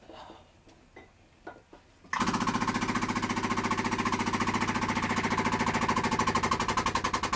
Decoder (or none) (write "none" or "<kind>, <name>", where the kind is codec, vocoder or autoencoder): none